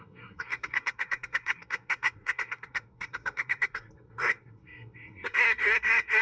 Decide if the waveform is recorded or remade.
remade